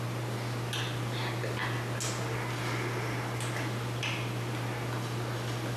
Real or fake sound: real